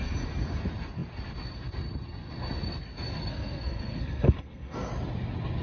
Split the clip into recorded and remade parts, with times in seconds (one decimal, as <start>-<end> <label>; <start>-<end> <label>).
0.0-3.3 recorded; 3.3-4.9 remade; 4.9-5.6 recorded